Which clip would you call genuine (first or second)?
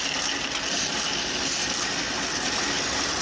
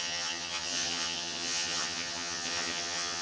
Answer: first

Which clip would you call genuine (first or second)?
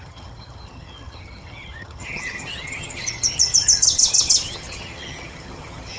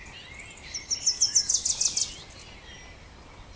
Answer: second